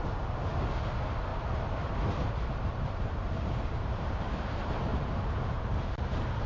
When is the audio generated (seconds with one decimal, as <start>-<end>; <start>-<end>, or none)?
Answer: 1.3-4.2; 4.9-6.5